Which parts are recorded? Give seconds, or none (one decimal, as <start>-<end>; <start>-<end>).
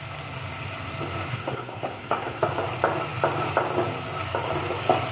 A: 0.0-1.3; 2.5-5.1